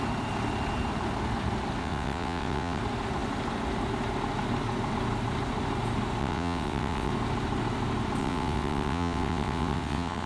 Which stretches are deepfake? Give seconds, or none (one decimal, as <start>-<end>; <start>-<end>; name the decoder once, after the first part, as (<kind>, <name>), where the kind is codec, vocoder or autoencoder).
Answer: 1.8-2.8 (vocoder, WaveNeXt); 6.2-7.1; 8.2-10.3